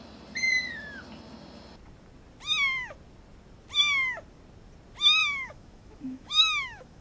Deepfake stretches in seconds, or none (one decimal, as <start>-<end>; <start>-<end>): 5.2-7.0